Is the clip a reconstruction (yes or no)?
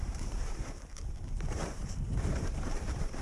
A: yes